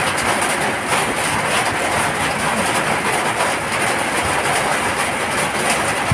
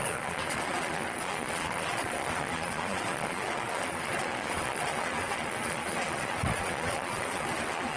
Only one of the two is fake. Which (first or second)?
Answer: second